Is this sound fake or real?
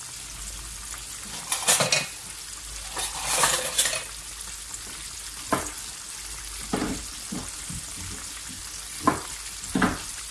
real